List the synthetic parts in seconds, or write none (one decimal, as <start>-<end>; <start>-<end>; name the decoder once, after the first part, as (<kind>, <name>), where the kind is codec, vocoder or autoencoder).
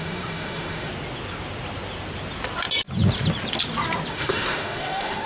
0.0-0.9 (autoencoder, DAC-VAE); 4.1-5.3